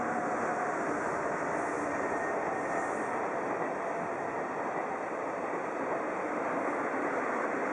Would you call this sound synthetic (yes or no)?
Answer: no